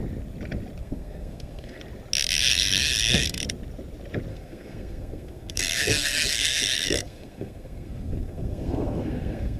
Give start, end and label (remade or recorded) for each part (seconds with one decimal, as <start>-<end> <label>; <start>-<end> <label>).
0.0-0.8 recorded; 0.8-1.8 remade; 1.8-2.5 recorded; 2.5-3.4 remade; 3.4-4.3 recorded; 4.3-9.6 remade